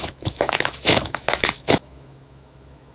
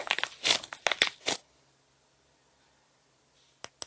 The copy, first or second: first